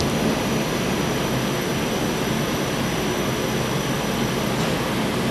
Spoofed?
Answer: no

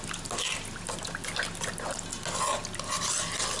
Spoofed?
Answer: no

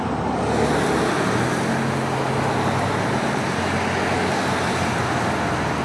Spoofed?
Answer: no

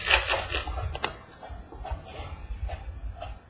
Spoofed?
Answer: no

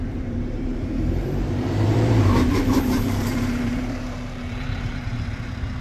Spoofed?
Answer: yes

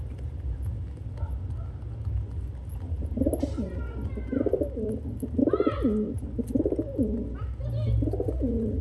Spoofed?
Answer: no